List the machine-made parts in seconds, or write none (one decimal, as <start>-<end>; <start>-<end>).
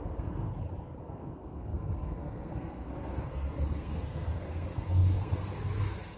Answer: 0.0-0.5; 1.0-6.2